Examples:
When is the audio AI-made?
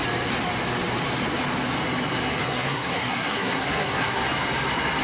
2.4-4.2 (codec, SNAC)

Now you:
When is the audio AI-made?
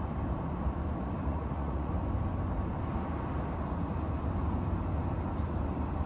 1.2-1.9 (vocoder, Vocos)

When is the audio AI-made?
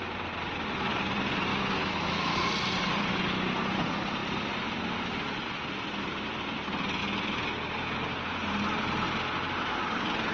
1.5-2.5 (autoencoder, DAC-VAE)